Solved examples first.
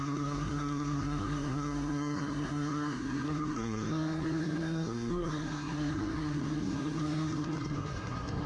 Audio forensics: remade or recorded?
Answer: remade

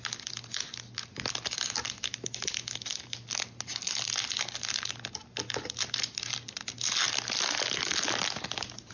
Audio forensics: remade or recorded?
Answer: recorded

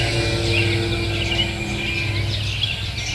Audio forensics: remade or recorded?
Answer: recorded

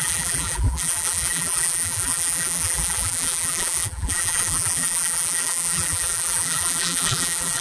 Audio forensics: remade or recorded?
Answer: remade